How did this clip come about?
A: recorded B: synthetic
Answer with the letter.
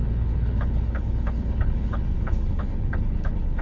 B